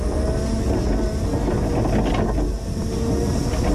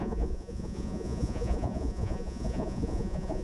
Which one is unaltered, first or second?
first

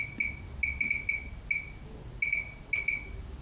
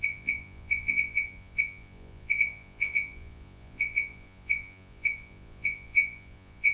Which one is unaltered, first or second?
first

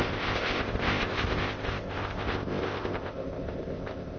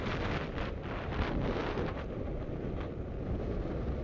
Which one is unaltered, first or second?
second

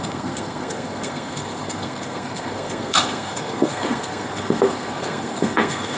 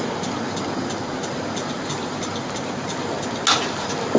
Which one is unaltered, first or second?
second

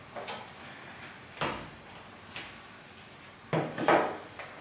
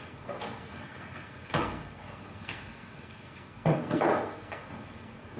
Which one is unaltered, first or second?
first